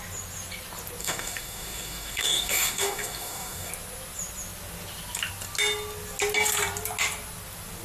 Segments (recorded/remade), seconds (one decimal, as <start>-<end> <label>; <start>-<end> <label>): 0.0-1.0 recorded; 1.0-3.7 remade; 3.7-7.8 recorded